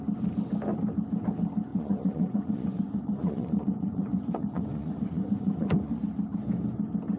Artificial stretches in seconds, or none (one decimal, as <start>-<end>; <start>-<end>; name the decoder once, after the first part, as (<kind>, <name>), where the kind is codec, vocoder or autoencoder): 1.7-6.0 (vocoder, Vocos)